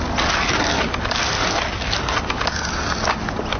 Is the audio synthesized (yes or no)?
no